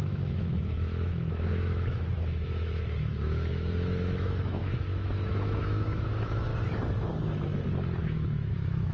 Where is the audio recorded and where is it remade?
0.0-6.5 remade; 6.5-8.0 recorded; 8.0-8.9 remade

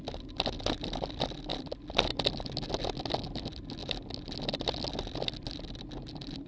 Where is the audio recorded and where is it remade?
0.0-6.5 recorded